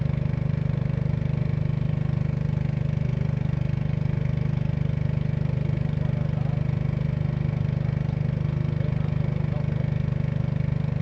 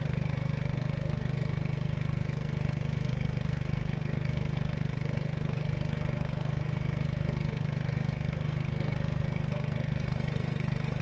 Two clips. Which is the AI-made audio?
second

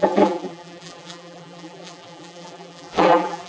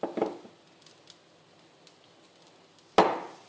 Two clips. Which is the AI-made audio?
first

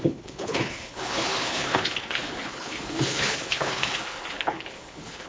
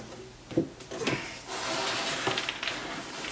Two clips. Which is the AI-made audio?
first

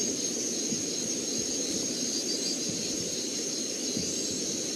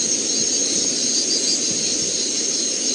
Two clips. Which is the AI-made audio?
first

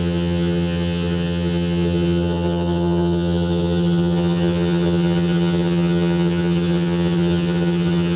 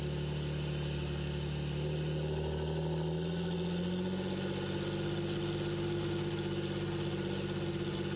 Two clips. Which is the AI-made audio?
first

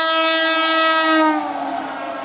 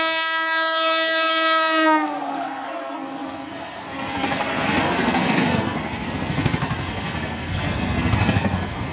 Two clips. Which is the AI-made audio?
second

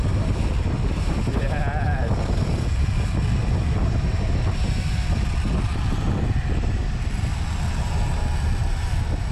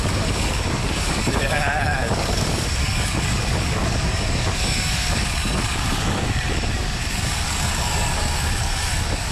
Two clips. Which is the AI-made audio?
second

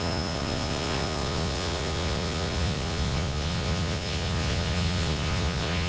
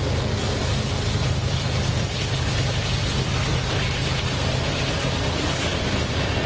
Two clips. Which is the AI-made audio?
first